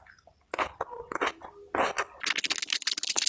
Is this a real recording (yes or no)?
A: yes